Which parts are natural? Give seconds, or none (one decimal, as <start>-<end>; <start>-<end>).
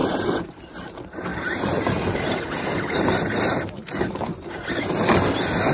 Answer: 0.6-1.3; 4.7-5.7